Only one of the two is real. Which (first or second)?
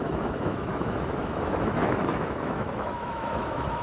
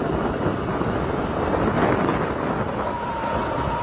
second